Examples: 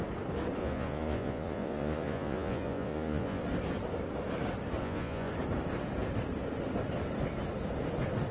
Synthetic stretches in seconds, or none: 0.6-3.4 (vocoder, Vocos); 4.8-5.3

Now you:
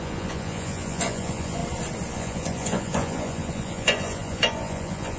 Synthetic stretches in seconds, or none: 0.0-1.6 (vocoder, Vocos); 2.1-5.2

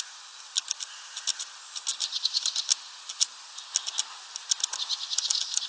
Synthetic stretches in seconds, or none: none